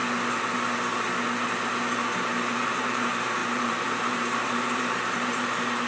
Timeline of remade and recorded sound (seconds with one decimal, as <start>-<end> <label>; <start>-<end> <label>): 0.0-2.7 recorded; 2.7-5.9 remade